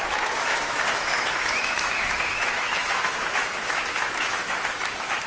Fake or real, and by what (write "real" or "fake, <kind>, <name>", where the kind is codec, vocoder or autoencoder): fake, autoencoder, DAC-VAE